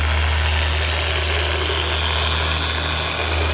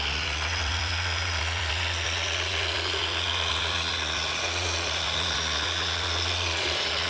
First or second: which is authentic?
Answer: first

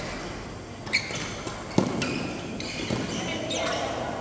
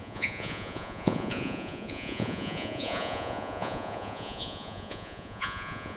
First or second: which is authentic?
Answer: first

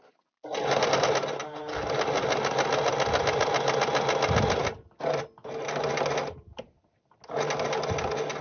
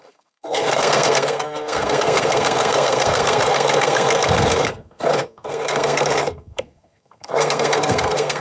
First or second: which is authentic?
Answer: first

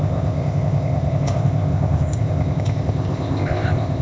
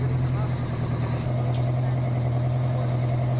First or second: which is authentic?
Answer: second